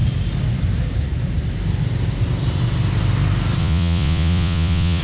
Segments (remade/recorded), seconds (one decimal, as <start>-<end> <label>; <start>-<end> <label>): 0.0-3.6 recorded; 3.6-5.0 remade